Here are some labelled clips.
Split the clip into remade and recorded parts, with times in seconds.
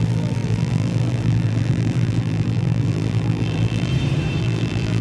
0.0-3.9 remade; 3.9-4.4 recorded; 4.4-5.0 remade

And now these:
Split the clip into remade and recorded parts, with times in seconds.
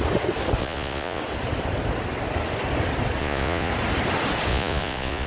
0.0-0.6 recorded; 0.6-1.2 remade; 1.2-3.2 recorded; 3.2-3.7 remade; 3.7-4.5 recorded; 4.5-5.3 remade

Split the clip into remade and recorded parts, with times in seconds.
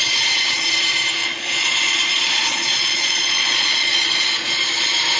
0.0-1.2 recorded; 1.2-4.3 remade; 4.3-5.2 recorded